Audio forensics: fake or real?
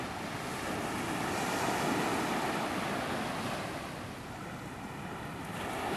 real